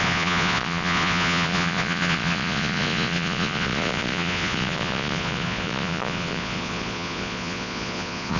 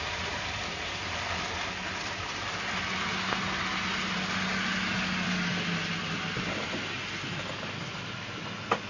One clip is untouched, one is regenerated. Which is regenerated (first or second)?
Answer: first